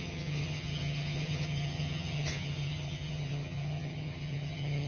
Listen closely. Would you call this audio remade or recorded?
remade